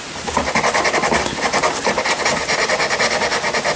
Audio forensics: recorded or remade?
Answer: recorded